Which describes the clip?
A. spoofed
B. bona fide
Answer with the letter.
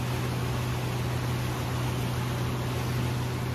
B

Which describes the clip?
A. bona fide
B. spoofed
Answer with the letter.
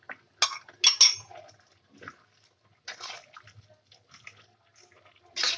A